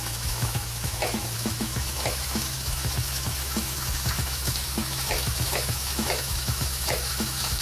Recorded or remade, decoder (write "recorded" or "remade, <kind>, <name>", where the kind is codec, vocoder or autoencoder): remade, autoencoder, DAC-VAE